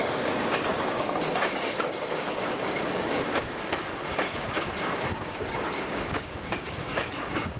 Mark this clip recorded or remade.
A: remade